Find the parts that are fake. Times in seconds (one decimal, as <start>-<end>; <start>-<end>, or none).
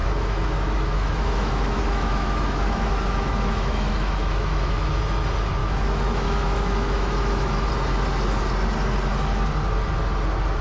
0.0-5.0; 5.6-7.7